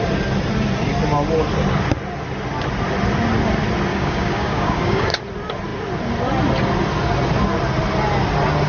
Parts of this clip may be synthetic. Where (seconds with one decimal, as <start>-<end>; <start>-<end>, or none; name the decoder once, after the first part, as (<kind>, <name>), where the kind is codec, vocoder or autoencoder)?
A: 3.9-5.2 (codec, DAC)